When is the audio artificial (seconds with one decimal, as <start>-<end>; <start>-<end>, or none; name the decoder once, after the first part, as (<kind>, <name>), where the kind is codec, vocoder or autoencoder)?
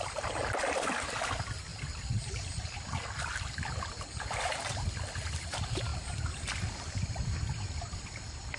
0.0-5.9 (vocoder, BigVGAN v2); 7.6-8.6